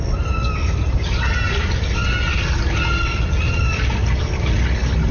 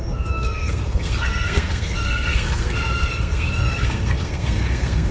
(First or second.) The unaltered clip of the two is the first